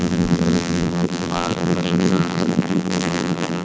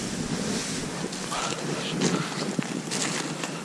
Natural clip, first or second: second